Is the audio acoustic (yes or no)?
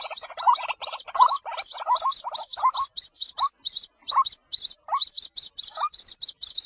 yes